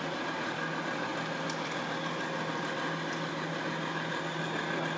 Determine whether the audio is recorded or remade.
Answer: recorded